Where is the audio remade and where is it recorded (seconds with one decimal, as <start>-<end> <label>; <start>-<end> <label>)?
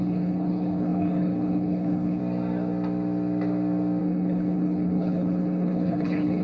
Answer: 0.0-2.2 remade; 2.2-4.0 recorded; 4.0-6.4 remade